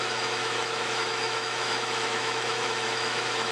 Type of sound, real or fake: fake